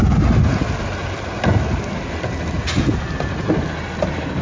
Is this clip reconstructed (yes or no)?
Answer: no